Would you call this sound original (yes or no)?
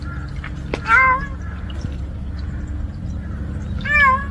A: yes